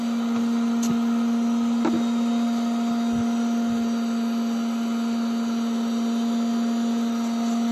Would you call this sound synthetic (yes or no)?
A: no